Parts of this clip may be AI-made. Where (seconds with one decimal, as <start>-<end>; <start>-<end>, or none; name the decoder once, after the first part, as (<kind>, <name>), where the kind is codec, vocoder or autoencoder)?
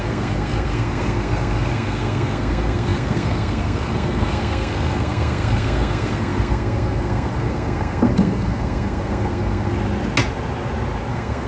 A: 0.0-9.7 (codec, SNAC); 11.1-11.5